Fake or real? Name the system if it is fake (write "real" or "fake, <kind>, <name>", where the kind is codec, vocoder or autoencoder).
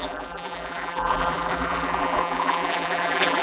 fake, vocoder, BigVGAN v2